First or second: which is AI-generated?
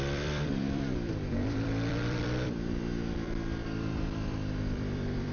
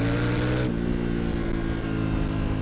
first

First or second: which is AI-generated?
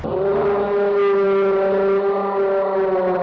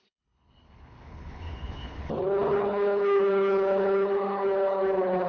second